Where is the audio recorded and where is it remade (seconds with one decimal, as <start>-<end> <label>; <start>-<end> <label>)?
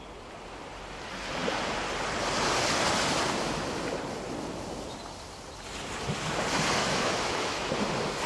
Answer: 0.0-6.8 recorded; 6.8-7.7 remade; 7.7-8.3 recorded